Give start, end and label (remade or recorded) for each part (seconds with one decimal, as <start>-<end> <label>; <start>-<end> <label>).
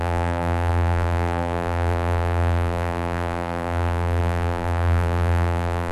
0.0-5.9 remade